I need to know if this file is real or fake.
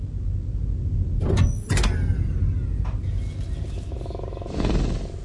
real